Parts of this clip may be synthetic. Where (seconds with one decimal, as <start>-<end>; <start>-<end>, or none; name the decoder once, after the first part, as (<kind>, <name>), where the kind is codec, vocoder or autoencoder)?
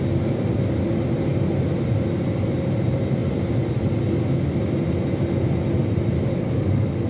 6.3-7.1 (codec, DAC)